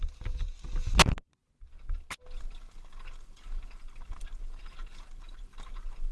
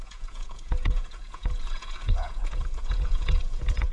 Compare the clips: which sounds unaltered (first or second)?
first